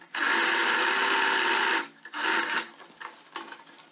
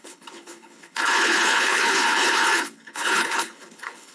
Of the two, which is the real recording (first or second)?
first